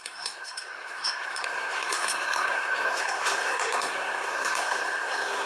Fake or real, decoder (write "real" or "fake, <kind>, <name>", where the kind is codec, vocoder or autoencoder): fake, codec, SNAC